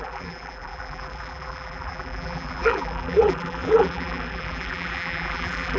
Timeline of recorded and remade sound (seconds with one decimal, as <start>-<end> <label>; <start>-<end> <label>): 0.0-5.8 remade